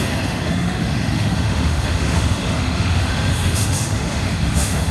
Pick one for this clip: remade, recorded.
remade